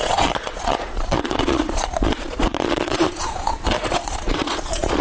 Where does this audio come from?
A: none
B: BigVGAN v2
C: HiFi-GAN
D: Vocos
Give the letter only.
D